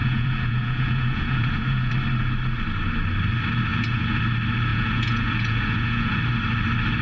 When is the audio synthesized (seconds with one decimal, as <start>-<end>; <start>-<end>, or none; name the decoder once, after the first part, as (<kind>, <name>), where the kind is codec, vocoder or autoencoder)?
0.0-1.9 (vocoder, Vocos); 3.7-4.2; 4.7-6.2